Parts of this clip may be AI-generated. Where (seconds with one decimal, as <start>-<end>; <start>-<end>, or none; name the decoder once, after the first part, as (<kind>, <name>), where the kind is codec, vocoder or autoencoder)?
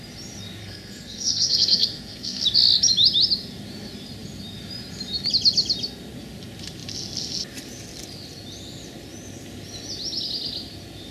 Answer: 0.6-2.4 (codec, SNAC)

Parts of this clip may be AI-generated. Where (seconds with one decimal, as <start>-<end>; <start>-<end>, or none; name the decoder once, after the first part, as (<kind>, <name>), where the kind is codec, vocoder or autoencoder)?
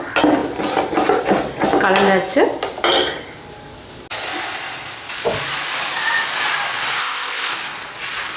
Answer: 7.0-7.5 (codec, ZipCodec)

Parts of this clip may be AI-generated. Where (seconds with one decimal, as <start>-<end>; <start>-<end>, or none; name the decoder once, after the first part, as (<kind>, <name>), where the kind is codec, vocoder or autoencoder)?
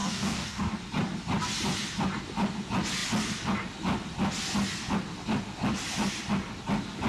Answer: 0.0-0.7 (codec, DAC)